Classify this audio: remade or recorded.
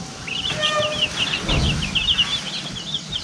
recorded